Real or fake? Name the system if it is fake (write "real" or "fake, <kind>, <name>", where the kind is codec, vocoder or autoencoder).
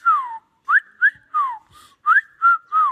real